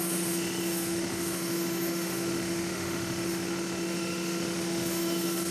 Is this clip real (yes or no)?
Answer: no